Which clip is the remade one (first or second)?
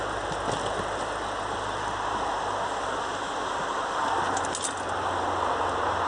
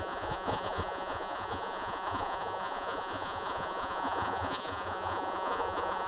second